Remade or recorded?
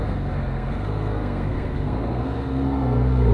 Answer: remade